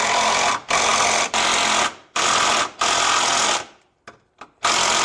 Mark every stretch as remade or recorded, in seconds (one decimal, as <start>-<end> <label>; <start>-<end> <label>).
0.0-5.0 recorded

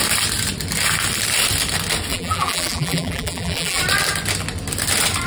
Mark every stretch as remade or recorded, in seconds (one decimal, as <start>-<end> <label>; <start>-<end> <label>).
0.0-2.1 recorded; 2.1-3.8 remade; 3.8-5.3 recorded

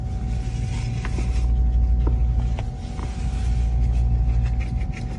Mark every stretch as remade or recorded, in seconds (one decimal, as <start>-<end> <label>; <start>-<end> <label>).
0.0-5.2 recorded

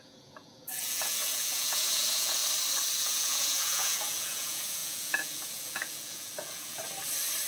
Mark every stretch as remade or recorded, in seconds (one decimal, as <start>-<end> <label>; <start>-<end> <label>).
0.0-2.4 remade; 2.4-3.0 recorded; 3.0-6.8 remade; 6.8-7.5 recorded

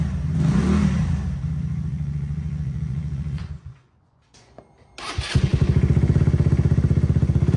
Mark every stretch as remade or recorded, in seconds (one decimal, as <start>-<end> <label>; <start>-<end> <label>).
0.0-1.9 recorded; 1.9-4.7 remade; 4.7-7.6 recorded

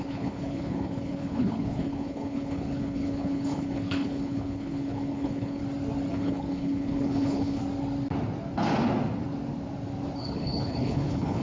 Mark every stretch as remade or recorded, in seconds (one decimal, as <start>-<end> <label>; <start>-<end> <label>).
0.0-5.6 remade; 5.6-6.1 recorded; 6.1-7.6 remade; 7.6-10.2 recorded; 10.2-11.4 remade

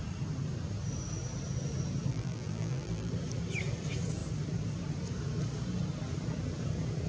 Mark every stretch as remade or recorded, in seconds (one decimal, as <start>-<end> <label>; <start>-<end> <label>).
0.0-2.1 recorded; 2.1-3.1 remade; 3.1-7.1 recorded

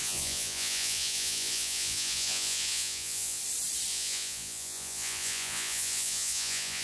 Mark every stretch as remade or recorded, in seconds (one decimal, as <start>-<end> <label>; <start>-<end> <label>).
0.0-3.4 remade; 3.4-3.9 recorded; 3.9-6.8 remade